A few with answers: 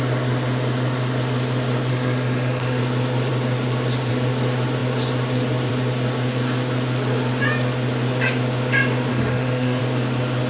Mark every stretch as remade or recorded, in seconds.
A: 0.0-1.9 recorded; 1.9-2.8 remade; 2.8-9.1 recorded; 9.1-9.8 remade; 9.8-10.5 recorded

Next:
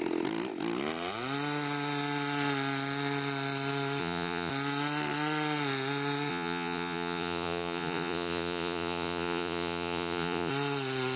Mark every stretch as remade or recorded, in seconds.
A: 0.0-4.0 recorded; 4.0-4.5 remade; 4.5-6.3 recorded; 6.3-10.5 remade; 10.5-11.2 recorded

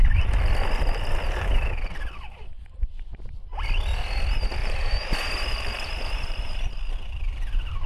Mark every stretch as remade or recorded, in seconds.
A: 0.0-2.5 recorded; 2.5-3.2 remade; 3.2-4.6 recorded; 4.6-6.9 remade; 6.9-7.9 recorded

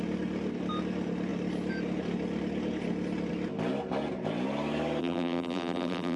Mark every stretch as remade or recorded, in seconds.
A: 0.0-5.0 recorded; 5.0-6.2 remade

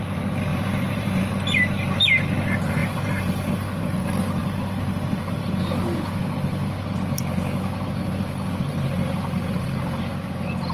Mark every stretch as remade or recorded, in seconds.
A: 0.0-0.5 recorded; 0.5-1.2 remade; 1.2-2.8 recorded; 2.8-3.8 remade; 3.8-4.4 recorded; 4.4-5.6 remade; 5.6-10.7 recorded

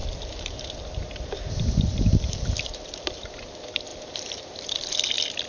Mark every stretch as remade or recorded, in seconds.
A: 0.0-3.3 remade; 3.3-5.5 recorded

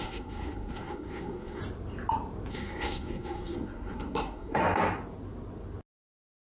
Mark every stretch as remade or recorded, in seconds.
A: 0.0-1.6 remade; 1.6-2.5 recorded; 2.5-4.6 remade; 4.6-6.4 recorded

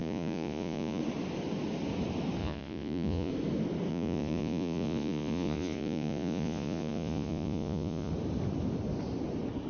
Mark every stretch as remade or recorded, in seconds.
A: 0.0-1.0 remade; 1.0-2.4 recorded; 2.4-3.3 remade; 3.3-3.9 recorded; 3.9-8.1 remade; 8.1-9.7 recorded